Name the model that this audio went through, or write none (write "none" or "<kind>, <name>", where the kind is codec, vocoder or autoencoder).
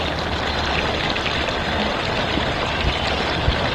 none